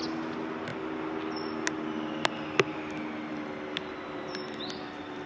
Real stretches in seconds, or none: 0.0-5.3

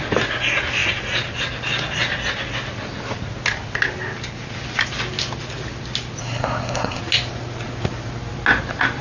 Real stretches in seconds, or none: 0.0-6.2; 7.0-9.0

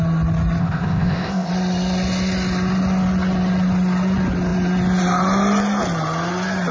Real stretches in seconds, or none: 0.0-0.6; 1.5-6.7

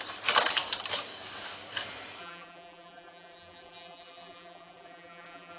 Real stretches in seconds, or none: 0.0-2.2

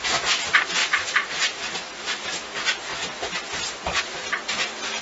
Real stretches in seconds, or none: 0.0-0.8; 2.2-5.0

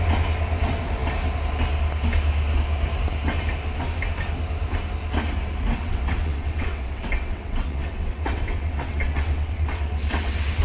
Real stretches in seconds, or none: 0.0-5.7

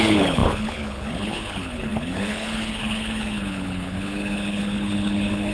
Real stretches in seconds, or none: none

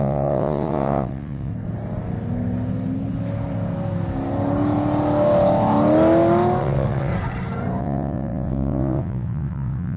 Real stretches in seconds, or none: 1.5-6.6; 7.1-7.8